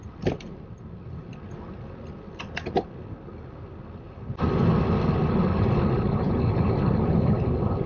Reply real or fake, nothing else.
real